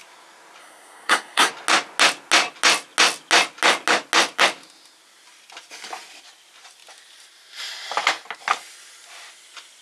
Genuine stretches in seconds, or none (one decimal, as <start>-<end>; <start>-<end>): 0.0-0.6; 1.5-9.8